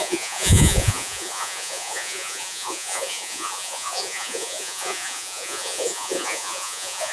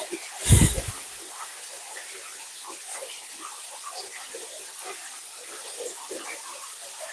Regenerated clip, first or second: first